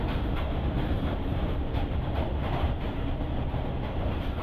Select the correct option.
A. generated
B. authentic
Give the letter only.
A